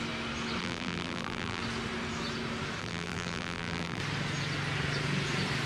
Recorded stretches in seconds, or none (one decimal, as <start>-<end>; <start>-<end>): 0.0-0.6; 1.6-2.8; 4.0-5.7